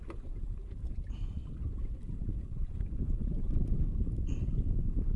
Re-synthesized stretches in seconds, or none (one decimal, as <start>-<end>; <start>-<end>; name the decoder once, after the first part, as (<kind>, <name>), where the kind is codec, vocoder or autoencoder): none